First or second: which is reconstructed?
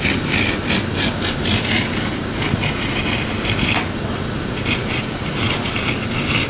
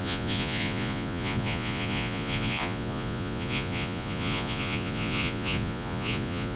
second